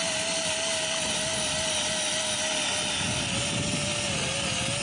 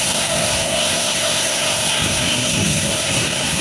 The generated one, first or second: second